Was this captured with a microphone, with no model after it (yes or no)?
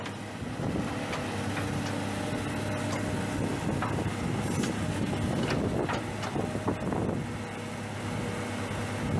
yes